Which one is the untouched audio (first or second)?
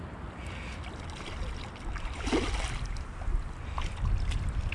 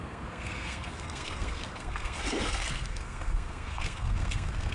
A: first